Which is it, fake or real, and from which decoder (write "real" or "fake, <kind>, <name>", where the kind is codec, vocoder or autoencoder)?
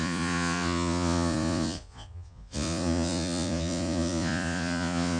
fake, vocoder, Vocos